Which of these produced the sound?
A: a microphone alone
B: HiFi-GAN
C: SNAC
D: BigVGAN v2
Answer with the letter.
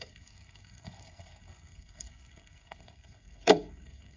C